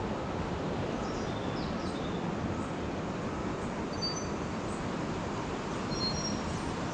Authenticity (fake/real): real